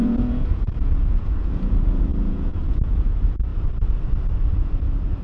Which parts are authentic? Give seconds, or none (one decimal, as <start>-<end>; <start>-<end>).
3.5-4.6